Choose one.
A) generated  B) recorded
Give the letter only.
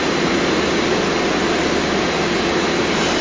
B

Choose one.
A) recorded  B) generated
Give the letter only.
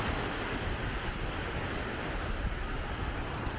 A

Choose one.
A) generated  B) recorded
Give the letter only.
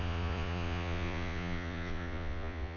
A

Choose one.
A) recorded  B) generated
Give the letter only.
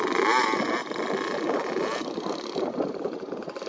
A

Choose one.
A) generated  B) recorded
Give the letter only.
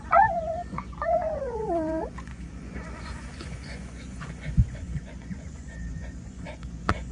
A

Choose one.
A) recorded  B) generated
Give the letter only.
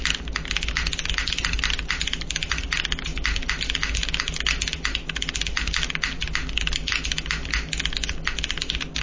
A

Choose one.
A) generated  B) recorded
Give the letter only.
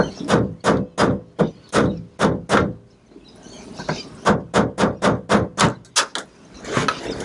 B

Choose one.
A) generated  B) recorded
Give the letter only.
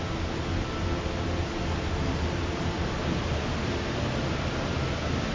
B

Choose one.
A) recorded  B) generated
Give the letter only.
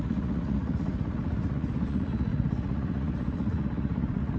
B